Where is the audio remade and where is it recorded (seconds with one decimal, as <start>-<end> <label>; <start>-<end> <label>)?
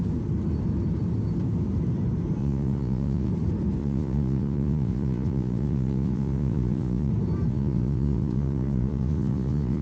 0.0-2.4 recorded; 2.4-3.3 remade; 3.3-3.8 recorded; 3.8-7.1 remade; 7.1-7.5 recorded; 7.5-9.8 remade